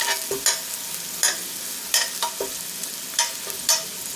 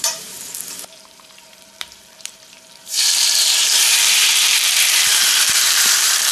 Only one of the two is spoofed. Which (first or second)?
second